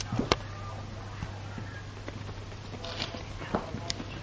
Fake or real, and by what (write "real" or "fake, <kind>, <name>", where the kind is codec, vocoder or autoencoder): real